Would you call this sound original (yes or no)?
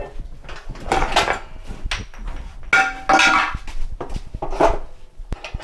yes